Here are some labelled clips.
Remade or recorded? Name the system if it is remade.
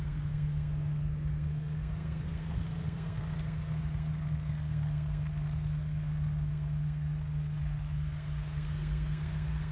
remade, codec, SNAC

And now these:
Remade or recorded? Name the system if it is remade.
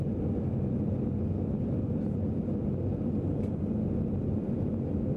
recorded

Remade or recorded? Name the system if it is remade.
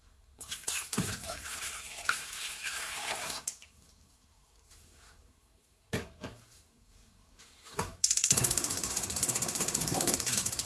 remade, codec, SNAC